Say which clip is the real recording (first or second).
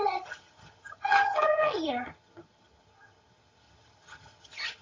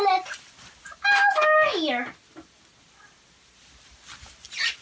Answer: second